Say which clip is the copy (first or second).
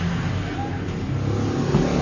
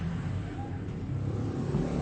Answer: second